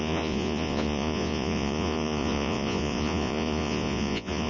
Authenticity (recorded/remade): remade